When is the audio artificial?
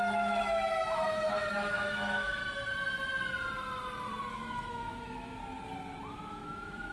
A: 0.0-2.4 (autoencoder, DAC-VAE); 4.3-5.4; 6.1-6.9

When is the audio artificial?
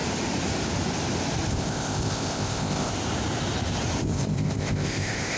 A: 1.5-2.9 (codec, ZipCodec); 4.0-5.4